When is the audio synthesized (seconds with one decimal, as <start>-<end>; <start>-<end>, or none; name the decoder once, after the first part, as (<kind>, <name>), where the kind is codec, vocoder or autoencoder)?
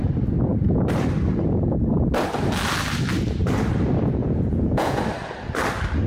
4.2-5.0 (vocoder, Vocos)